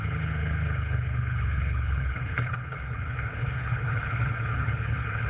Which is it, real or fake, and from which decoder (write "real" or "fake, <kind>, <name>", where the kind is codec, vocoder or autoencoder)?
fake, codec, HILCodec